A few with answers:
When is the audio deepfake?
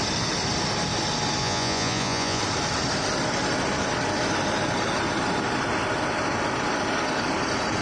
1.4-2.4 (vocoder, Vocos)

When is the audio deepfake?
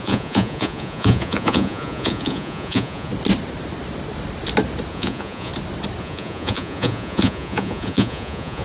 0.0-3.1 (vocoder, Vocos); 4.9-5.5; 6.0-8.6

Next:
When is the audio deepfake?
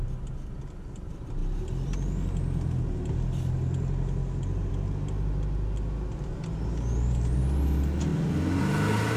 none